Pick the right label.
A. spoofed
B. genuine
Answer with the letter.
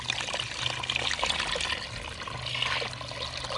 B